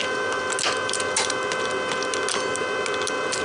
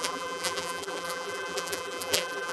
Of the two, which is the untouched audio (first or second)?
first